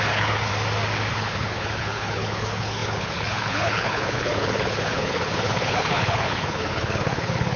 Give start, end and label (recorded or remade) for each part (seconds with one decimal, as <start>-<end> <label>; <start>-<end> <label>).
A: 0.0-0.5 remade; 0.5-1.1 recorded; 1.1-7.6 remade